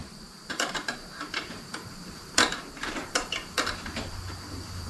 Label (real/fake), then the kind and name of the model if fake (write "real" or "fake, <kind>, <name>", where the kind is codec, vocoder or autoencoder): fake, vocoder, BigVGAN v2